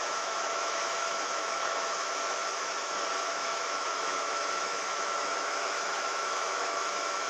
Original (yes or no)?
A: no